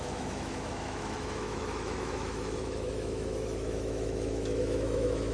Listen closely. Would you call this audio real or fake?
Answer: fake